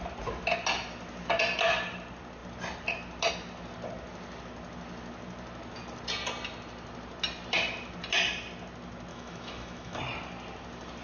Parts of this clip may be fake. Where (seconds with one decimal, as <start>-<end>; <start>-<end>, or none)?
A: 9.1-10.0